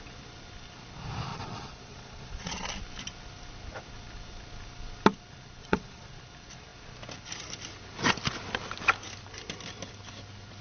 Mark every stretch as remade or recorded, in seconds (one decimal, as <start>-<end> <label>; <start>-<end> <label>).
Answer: 0.0-1.3 recorded; 1.3-2.7 remade; 2.7-5.6 recorded; 5.6-6.1 remade; 6.1-10.6 recorded